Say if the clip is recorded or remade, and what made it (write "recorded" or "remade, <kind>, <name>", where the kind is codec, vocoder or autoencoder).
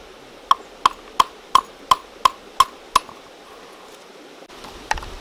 recorded